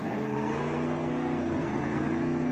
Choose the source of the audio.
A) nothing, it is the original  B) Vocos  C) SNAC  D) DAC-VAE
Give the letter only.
C